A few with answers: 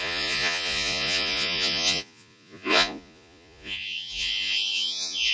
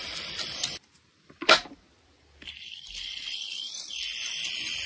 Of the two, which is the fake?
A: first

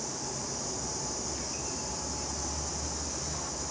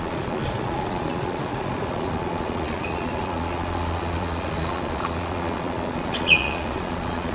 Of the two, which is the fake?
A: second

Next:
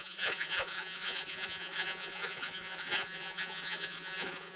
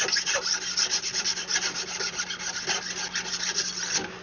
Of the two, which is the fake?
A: first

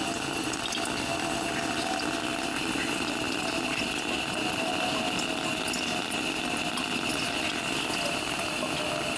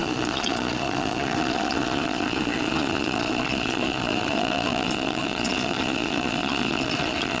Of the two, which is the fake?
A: second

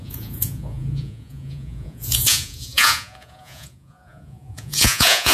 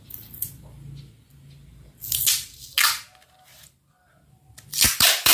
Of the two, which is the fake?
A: first